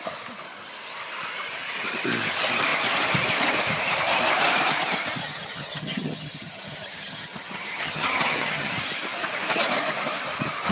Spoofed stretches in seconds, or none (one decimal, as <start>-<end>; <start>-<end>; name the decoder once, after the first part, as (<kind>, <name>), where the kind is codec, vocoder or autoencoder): 5.2-8.7 (vocoder, HiFi-GAN)